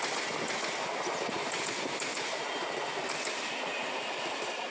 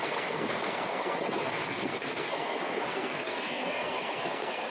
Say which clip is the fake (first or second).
second